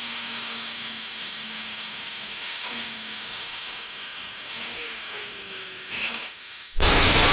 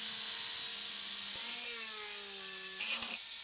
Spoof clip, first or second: first